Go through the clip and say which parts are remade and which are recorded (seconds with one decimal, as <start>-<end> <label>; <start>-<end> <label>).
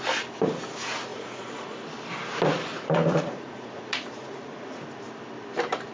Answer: 0.0-1.1 recorded; 1.1-1.8 remade; 1.8-2.7 recorded; 2.7-4.8 remade; 4.8-5.9 recorded